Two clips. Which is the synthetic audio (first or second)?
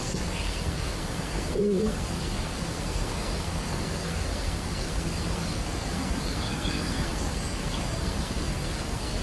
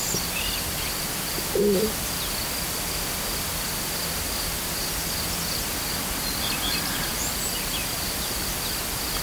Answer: first